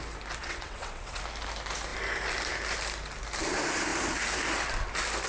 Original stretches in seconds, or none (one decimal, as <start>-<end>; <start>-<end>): 0.0-0.4; 1.2-5.3